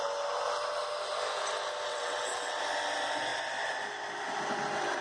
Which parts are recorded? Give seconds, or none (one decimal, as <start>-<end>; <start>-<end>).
0.0-1.9; 2.6-5.0